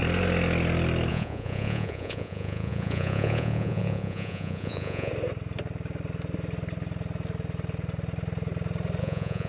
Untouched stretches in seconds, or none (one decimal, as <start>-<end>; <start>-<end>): 0.0-1.1; 5.1-9.0